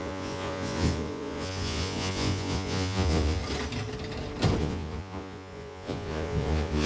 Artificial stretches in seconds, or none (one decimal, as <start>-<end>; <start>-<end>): 0.0-3.4; 4.6-6.9